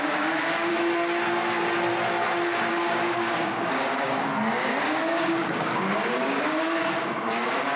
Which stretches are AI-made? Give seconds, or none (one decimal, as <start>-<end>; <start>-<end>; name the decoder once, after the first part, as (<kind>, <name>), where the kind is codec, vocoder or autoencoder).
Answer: 0.0-0.7 (codec, DAC); 2.7-4.3; 4.8-7.8